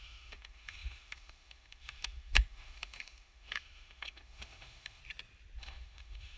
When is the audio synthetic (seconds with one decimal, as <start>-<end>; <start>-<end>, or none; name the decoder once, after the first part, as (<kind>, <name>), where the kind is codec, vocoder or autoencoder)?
0.0-5.0 (autoencoder, DAC-VAE); 5.6-6.4